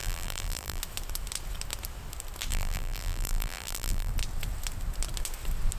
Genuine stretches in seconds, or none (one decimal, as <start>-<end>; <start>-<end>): 0.8-2.5; 4.1-5.8